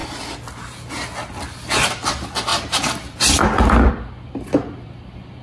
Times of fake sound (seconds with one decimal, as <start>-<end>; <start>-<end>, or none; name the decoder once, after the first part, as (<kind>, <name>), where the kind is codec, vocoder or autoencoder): 1.7-5.4 (vocoder, BigVGAN v2)